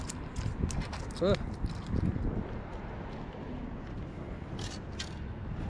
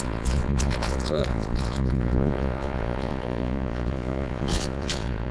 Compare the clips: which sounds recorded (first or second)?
first